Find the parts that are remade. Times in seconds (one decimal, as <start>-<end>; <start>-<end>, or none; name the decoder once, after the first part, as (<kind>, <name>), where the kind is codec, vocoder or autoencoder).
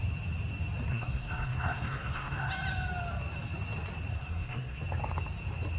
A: 0.9-2.5 (codec, SNAC); 4.1-4.8